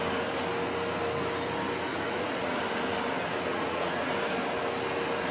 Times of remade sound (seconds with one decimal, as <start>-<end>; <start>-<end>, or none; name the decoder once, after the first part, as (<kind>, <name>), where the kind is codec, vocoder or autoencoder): 1.9-2.6 (vocoder, Vocos); 3.5-4.1